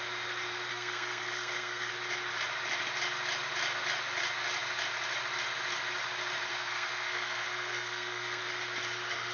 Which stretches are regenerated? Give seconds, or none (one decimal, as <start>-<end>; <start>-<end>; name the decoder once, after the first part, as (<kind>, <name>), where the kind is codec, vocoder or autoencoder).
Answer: 0.7-1.9 (codec, SNAC); 6.5-8.4